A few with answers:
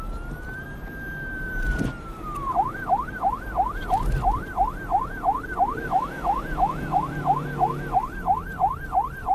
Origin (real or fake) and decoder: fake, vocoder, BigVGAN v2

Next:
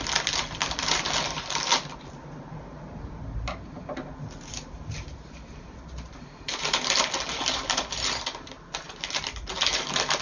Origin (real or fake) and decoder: real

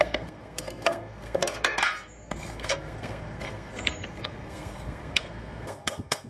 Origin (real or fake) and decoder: fake, codec, SNAC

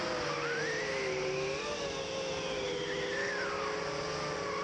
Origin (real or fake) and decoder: real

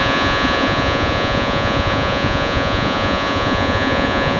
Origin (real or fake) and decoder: fake, vocoder, Vocos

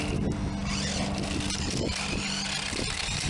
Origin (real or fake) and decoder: real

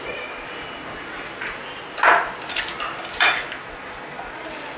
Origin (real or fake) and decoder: real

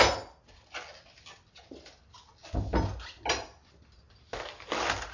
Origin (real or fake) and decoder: real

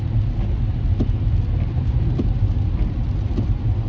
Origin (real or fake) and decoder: real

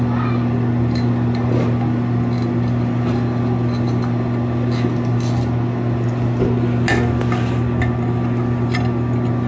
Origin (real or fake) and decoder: real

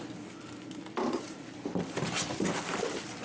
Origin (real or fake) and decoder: real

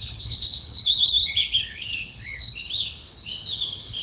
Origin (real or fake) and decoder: fake, codec, HILCodec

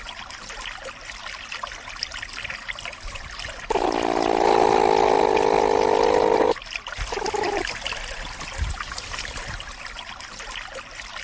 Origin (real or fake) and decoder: real